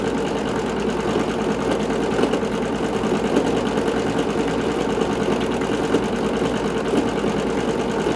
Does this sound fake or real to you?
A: real